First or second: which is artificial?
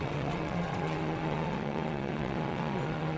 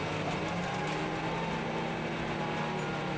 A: first